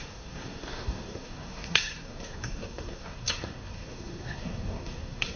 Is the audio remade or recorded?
remade